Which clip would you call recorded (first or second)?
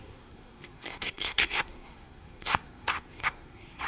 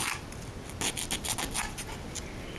second